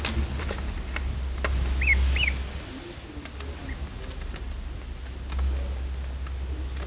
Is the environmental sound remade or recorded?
recorded